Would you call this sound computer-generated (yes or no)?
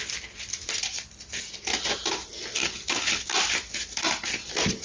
no